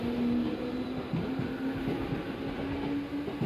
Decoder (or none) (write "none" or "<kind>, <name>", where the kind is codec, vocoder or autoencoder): none